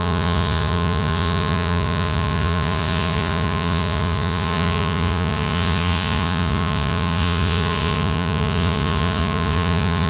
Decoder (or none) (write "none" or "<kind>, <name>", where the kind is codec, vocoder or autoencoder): vocoder, Vocos